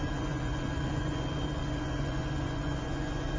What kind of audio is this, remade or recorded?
remade